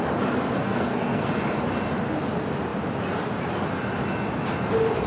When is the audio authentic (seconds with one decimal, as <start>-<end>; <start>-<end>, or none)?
0.0-0.6; 1.3-5.1